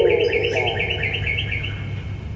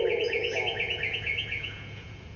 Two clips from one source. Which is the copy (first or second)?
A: second